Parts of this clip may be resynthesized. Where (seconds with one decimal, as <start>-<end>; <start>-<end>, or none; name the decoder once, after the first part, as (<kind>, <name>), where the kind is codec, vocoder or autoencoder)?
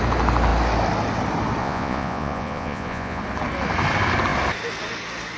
1.6-3.2 (vocoder, Vocos)